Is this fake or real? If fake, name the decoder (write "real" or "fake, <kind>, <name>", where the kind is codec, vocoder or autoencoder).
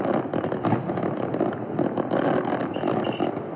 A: real